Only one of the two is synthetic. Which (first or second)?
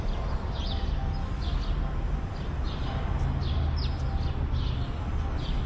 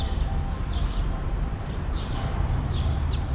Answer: second